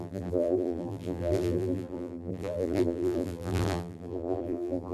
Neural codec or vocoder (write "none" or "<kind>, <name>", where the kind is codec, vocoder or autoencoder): vocoder, BigVGAN v2